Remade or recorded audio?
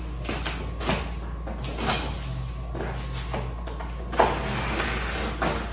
recorded